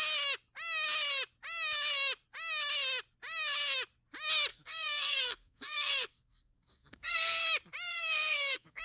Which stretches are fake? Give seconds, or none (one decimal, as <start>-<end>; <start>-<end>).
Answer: 4.5-7.4; 7.9-8.8